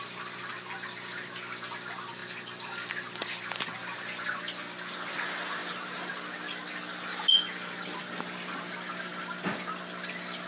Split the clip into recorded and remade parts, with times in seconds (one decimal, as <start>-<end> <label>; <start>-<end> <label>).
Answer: 0.0-10.5 recorded